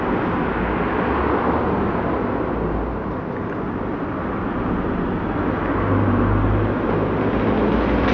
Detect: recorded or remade recorded